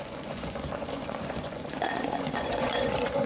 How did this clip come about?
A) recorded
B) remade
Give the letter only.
B